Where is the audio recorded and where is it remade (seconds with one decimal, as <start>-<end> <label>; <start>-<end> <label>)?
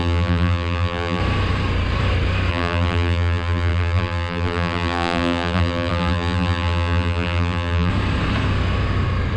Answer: 0.0-1.2 remade; 1.2-2.5 recorded; 2.5-7.9 remade; 7.9-9.4 recorded